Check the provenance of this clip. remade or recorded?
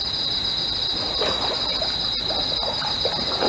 recorded